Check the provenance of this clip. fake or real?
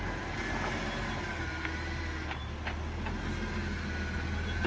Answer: real